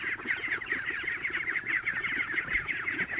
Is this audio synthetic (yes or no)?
yes